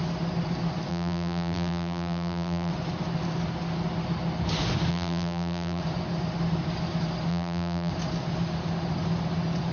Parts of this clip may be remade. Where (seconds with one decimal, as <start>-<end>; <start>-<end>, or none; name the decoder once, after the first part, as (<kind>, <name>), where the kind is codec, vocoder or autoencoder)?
0.9-2.7 (vocoder, BigVGAN v2); 4.9-5.8; 7.3-7.9